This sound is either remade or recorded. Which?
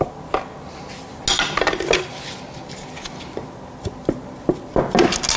recorded